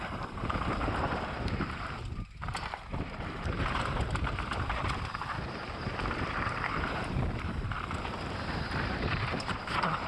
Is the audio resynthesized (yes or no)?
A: yes